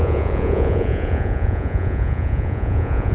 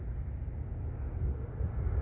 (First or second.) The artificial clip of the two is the first